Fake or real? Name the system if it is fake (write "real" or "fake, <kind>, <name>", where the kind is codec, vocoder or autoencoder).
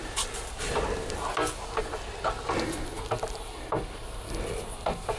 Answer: real